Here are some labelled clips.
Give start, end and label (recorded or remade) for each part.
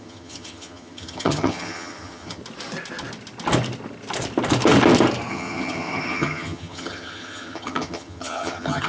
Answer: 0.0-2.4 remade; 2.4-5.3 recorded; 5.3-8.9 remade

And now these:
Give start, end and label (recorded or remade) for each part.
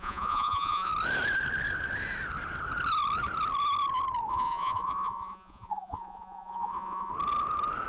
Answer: 0.0-0.9 remade; 0.9-4.3 recorded; 4.3-7.1 remade; 7.1-7.9 recorded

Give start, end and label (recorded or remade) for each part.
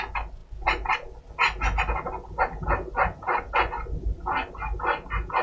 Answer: 0.0-5.4 recorded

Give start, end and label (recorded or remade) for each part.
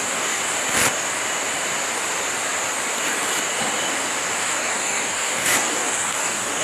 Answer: 0.0-0.4 remade; 0.4-4.4 recorded; 4.4-6.6 remade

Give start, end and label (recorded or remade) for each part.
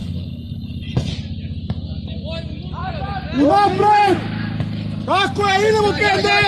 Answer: 0.0-1.1 remade; 1.1-6.5 recorded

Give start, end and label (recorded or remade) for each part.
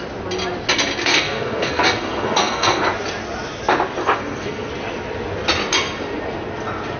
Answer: 0.0-1.0 recorded; 1.0-2.8 remade; 2.8-4.0 recorded; 4.0-4.7 remade; 4.7-7.0 recorded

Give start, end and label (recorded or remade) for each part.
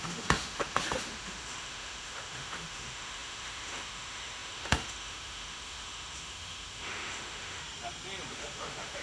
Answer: 0.0-7.6 remade; 7.6-8.3 recorded; 8.3-9.0 remade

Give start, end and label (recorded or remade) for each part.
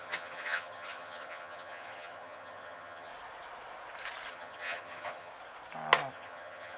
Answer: 0.0-3.1 remade; 3.1-4.3 recorded; 4.3-5.3 remade; 5.3-6.1 recorded; 6.1-6.8 remade